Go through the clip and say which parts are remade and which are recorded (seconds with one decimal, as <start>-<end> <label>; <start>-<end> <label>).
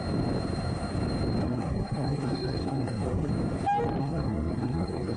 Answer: 0.0-1.4 recorded; 1.4-3.3 remade; 3.3-4.0 recorded; 4.0-5.2 remade